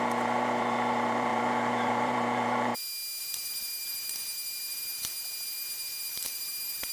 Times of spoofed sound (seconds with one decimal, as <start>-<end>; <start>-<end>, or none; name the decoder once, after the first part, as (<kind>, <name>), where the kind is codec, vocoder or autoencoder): 0.0-2.7 (vocoder, BigVGAN v2); 3.2-6.9